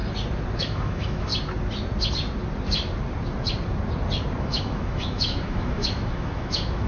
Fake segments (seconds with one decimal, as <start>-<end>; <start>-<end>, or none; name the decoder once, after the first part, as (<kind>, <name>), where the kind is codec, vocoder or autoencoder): 0.6-1.3 (autoencoder, DAC-VAE); 4.4-6.9